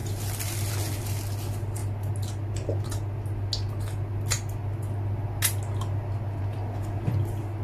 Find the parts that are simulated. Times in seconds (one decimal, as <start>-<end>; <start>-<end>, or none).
0.0-0.7